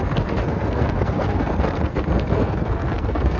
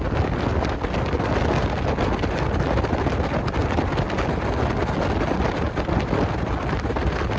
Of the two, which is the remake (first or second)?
first